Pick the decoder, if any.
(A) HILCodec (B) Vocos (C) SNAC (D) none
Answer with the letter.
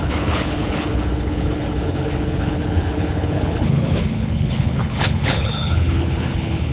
A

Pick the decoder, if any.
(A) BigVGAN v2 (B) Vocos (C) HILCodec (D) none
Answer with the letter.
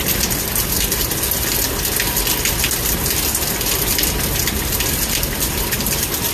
D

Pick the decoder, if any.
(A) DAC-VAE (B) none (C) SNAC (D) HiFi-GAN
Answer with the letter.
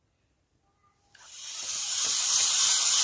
B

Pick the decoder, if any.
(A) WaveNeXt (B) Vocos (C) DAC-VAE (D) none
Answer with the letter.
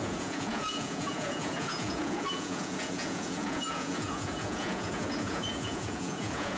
B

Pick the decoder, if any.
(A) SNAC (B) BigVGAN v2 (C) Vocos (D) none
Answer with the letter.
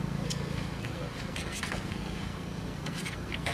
A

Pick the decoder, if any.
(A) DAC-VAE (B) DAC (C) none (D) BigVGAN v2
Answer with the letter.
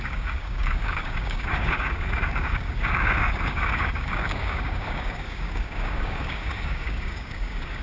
B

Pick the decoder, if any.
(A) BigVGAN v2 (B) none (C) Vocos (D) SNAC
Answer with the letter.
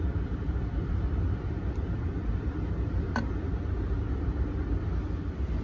A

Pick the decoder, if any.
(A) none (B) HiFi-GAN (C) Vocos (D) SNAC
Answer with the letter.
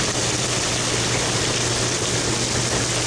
A